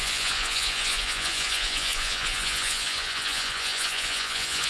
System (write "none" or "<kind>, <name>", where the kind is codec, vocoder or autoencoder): vocoder, Vocos